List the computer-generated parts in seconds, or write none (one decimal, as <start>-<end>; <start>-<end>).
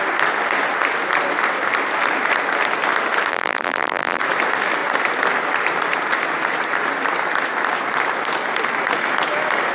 3.3-4.2